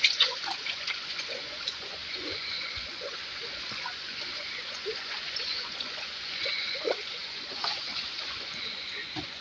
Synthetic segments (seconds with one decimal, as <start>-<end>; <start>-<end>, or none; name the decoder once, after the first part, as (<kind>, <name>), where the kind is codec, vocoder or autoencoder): 0.0-9.4 (vocoder, Vocos)